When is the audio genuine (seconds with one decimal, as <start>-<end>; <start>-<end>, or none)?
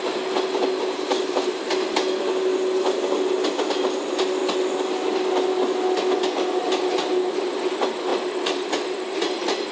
0.0-9.7